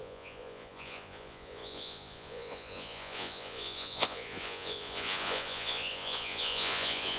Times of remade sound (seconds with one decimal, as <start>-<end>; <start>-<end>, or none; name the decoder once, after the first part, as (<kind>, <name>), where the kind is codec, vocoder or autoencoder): 0.0-7.2 (vocoder, Vocos)